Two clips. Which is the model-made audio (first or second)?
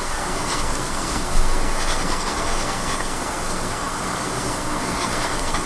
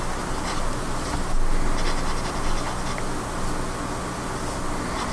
first